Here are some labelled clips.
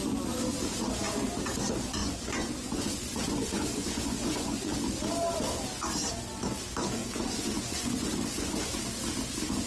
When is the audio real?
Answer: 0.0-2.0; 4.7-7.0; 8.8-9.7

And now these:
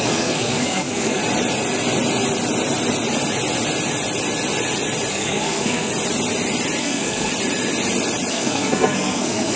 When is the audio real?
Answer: 1.2-5.1; 5.9-6.8; 7.3-8.3

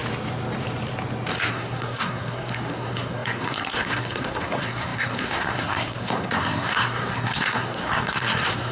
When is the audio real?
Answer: 0.0-1.5

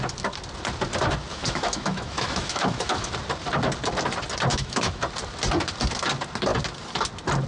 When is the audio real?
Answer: 0.0-1.3; 3.1-4.5; 5.0-7.5

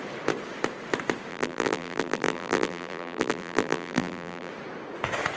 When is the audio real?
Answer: 0.0-1.3; 4.5-5.4